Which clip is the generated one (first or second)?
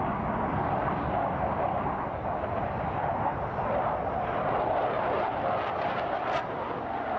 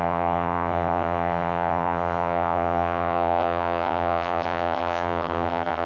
second